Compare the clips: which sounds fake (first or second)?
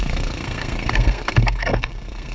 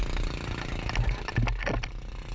first